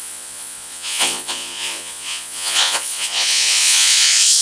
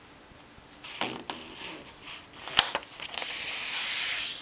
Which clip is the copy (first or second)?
first